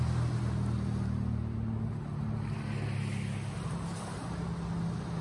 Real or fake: real